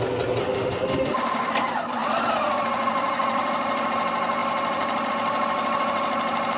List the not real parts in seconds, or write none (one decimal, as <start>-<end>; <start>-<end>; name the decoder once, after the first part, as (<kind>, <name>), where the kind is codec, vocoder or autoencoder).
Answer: 0.4-1.5 (autoencoder, DAC-VAE)